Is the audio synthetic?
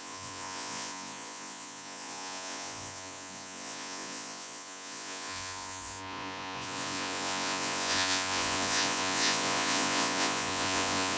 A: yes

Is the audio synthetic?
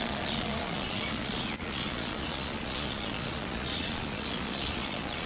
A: yes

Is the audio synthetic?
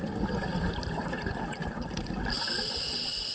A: no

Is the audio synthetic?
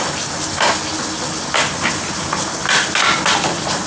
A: no